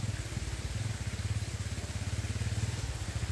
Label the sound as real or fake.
real